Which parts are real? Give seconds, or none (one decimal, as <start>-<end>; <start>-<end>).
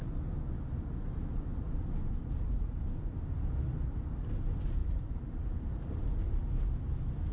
0.0-4.8; 5.7-7.3